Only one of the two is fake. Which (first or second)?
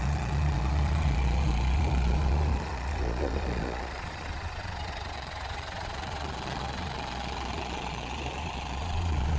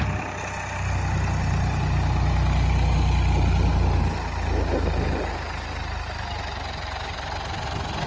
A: first